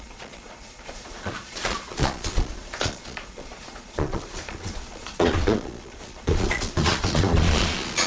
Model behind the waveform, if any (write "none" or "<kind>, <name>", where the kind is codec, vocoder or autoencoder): vocoder, Vocos